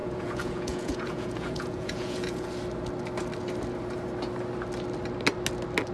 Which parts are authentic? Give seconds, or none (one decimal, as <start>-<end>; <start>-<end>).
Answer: 2.5-5.9